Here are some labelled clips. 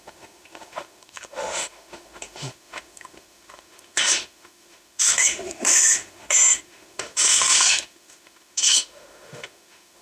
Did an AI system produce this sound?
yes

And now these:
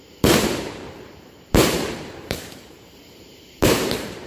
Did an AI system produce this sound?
yes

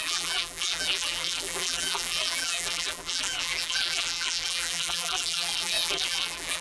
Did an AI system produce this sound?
yes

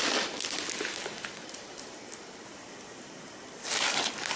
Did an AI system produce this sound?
no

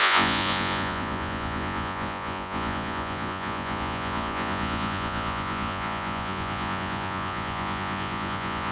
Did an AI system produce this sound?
yes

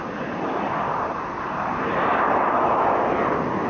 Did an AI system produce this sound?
no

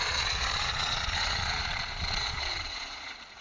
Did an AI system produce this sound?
yes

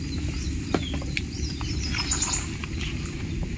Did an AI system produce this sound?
no